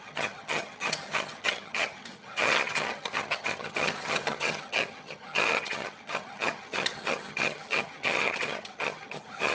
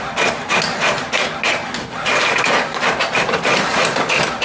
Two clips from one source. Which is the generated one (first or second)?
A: first